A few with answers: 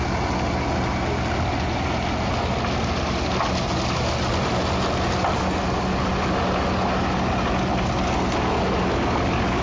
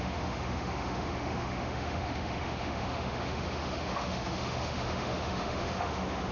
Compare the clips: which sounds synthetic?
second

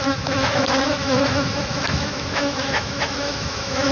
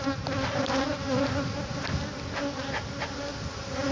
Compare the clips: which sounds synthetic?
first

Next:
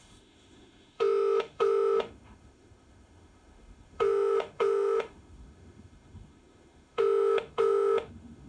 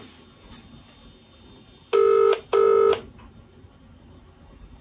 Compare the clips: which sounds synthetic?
first